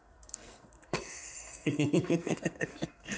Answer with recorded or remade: remade